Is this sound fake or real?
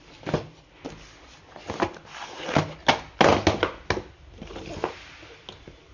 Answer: real